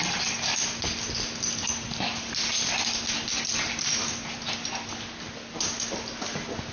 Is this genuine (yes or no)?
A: yes